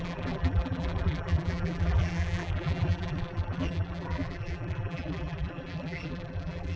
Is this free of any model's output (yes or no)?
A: no